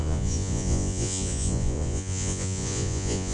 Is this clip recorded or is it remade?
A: remade